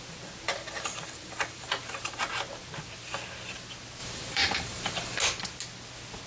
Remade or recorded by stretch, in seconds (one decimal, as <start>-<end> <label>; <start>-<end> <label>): 0.0-0.5 recorded; 0.5-2.3 remade; 2.3-4.0 recorded; 4.0-5.2 remade; 5.2-6.3 recorded